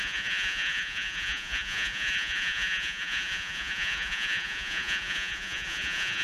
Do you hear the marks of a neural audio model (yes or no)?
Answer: yes